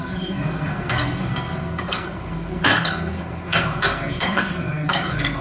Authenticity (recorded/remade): remade